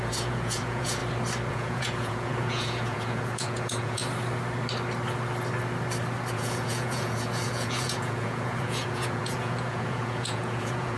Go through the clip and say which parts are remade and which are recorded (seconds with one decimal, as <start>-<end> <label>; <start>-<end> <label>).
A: 0.0-1.0 remade; 1.0-1.5 recorded; 1.5-4.0 remade; 4.0-6.3 recorded; 6.3-11.0 remade